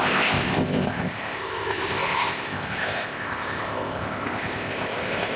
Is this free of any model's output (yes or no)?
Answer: no